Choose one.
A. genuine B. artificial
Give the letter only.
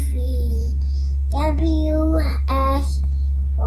B